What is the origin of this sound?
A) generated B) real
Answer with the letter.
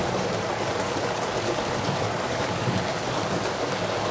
A